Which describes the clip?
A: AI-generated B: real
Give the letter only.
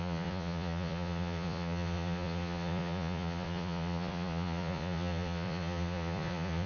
A